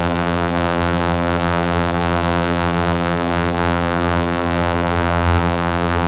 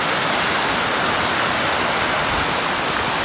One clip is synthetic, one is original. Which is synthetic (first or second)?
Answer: first